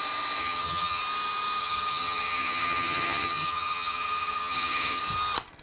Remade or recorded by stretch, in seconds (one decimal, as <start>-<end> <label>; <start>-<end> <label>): 0.0-0.4 recorded; 0.4-1.0 remade; 1.0-1.6 recorded; 1.6-5.0 remade; 5.0-5.6 recorded

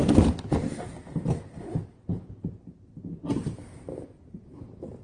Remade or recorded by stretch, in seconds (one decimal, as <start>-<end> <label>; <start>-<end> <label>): 0.0-5.0 recorded

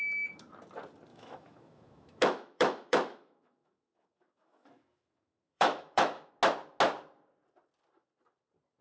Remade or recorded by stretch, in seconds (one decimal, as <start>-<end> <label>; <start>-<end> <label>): 0.0-1.1 recorded; 1.1-6.3 remade; 6.3-8.8 recorded

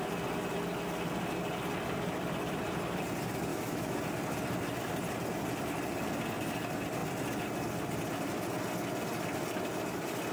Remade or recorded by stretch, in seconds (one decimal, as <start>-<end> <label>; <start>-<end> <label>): 0.0-3.5 recorded; 3.5-4.0 remade; 4.0-10.3 recorded

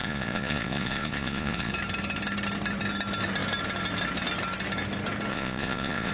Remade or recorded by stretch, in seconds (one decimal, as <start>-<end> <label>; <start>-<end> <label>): 0.0-1.7 remade; 1.7-5.3 recorded; 5.3-6.1 remade

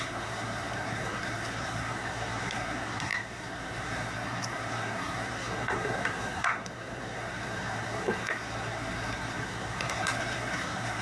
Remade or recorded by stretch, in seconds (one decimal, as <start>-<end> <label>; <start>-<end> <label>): 0.0-11.0 remade